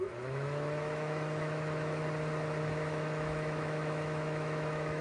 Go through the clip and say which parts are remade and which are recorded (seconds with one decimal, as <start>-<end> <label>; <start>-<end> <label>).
0.0-2.0 remade; 2.0-2.6 recorded; 2.6-5.0 remade